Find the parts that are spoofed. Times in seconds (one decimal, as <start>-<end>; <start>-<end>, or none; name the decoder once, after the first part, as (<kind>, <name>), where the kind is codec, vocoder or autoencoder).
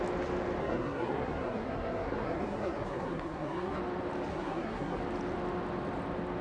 0.6-3.8 (codec, SNAC); 4.3-5.0